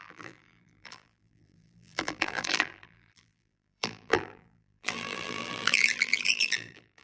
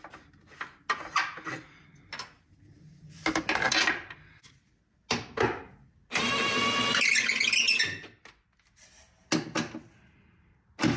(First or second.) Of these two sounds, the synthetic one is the first